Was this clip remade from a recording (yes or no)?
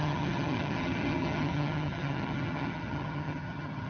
yes